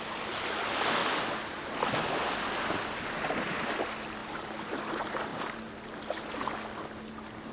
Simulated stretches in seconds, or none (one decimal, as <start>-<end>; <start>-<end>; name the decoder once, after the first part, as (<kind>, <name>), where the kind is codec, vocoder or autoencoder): 4.2-4.8 (vocoder, BigVGAN v2); 5.3-6.0